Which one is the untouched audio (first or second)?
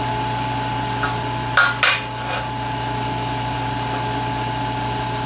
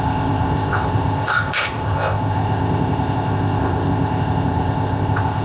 first